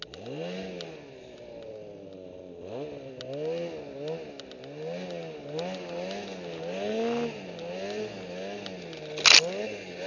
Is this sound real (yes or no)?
yes